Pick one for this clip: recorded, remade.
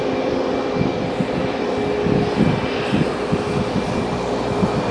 recorded